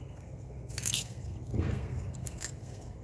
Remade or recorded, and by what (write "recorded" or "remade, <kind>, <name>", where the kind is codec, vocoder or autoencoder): remade, codec, SNAC